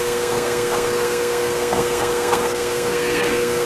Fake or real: fake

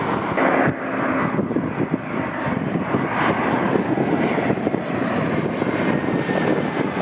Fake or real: real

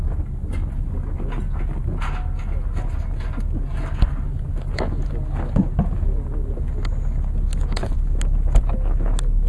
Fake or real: real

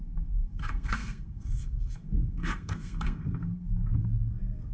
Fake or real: fake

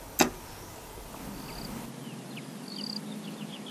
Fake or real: real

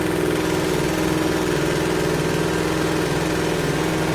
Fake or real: real